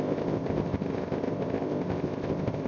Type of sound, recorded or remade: remade